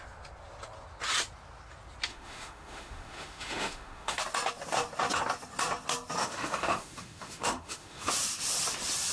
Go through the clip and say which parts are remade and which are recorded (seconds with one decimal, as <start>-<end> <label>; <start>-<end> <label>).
0.0-2.1 recorded; 2.1-4.2 remade; 4.2-6.2 recorded; 6.2-8.1 remade; 8.1-9.1 recorded

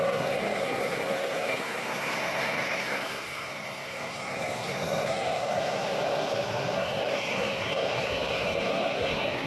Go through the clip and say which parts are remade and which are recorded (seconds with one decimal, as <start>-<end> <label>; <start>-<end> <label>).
0.0-9.5 remade

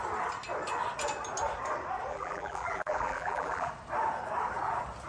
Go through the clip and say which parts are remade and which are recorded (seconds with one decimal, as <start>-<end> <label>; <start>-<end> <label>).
0.0-2.1 recorded; 2.1-3.7 remade; 3.7-5.1 recorded

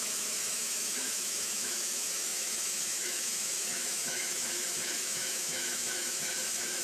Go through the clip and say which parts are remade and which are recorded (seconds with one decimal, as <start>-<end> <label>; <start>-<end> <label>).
0.0-6.8 remade

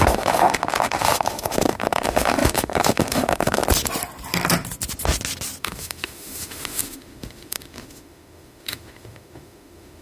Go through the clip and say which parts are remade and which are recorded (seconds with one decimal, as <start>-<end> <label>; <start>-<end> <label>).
0.0-3.6 remade; 3.6-5.6 recorded; 5.6-10.0 remade

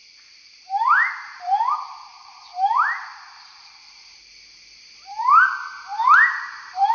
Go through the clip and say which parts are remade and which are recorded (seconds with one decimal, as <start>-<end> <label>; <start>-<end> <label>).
0.0-6.9 remade

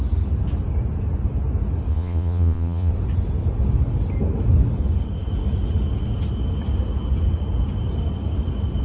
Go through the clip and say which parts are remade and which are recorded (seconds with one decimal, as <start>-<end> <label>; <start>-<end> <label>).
0.0-1.9 recorded; 1.9-2.9 remade; 2.9-8.8 recorded

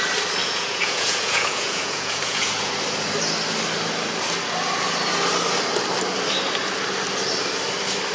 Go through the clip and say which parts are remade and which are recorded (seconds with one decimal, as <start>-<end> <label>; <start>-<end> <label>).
0.0-0.4 recorded; 0.4-2.7 remade; 2.7-8.1 recorded